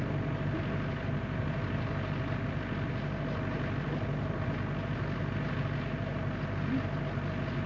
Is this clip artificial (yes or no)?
no